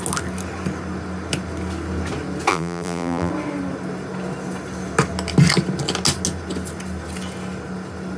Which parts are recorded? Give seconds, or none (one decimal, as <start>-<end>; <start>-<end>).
0.0-2.5; 3.3-8.2